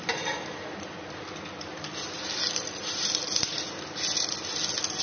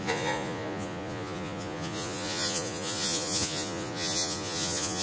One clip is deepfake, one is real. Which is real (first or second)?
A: first